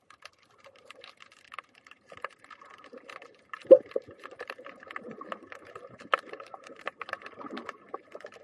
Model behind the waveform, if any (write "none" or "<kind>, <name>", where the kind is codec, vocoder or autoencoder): vocoder, BigVGAN v2